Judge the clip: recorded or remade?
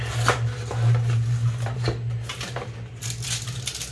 recorded